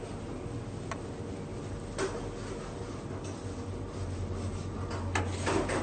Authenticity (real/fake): real